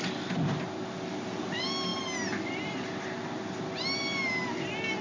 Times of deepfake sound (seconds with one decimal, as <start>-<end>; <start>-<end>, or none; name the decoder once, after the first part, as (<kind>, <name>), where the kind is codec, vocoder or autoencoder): none